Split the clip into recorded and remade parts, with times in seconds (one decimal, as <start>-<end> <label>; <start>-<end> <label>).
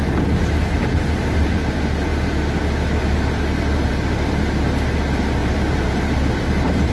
0.0-5.4 recorded; 5.4-6.9 remade